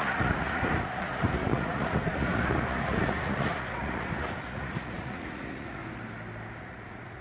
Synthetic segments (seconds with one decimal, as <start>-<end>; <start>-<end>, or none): 0.0-5.8; 6.6-7.2